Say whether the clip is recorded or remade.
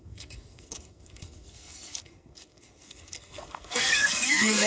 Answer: remade